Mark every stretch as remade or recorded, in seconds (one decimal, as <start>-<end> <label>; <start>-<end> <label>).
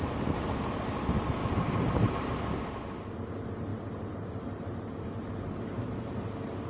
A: 0.0-1.4 recorded; 1.4-2.1 remade; 2.1-3.7 recorded; 3.7-6.1 remade; 6.1-6.7 recorded